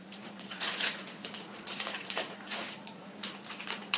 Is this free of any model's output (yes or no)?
no